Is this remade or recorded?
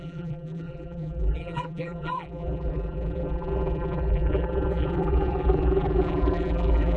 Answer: remade